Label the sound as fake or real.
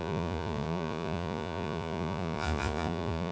fake